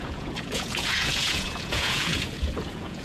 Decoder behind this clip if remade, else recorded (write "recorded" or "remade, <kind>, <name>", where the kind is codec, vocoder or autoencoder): remade, vocoder, Vocos